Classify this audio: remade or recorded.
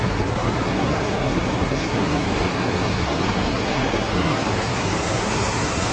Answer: remade